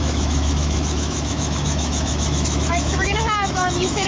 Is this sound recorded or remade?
remade